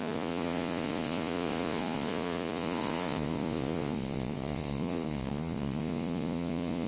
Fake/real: fake